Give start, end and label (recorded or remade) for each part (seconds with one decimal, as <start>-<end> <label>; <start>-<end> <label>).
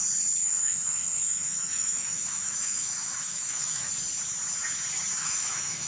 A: 0.0-0.4 recorded; 0.4-3.9 remade; 3.9-5.2 recorded; 5.2-5.9 remade